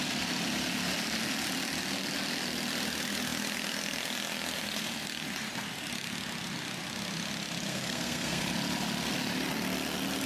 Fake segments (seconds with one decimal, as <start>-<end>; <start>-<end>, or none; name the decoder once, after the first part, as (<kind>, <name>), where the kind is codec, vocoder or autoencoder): 7.7-8.4 (codec, SNAC)